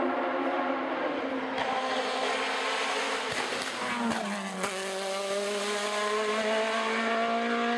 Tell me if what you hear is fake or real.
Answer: real